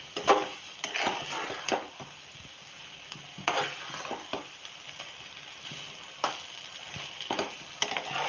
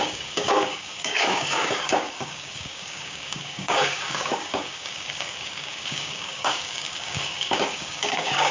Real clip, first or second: first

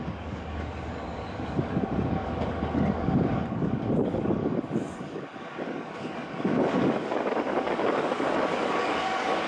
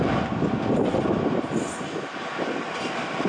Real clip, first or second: second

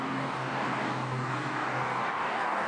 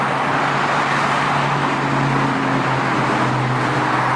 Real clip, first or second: second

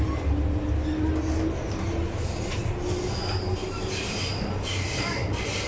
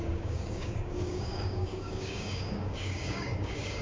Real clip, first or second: first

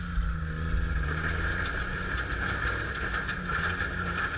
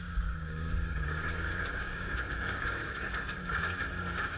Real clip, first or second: first